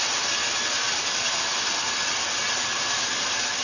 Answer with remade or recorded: recorded